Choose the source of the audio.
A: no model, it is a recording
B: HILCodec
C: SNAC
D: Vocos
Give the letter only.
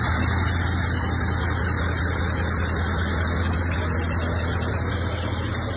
A